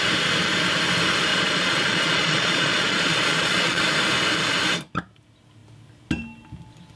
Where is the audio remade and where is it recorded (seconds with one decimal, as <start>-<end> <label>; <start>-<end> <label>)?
0.0-1.3 recorded; 1.3-3.8 remade; 3.8-7.0 recorded